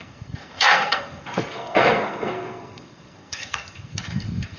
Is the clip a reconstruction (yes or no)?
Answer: yes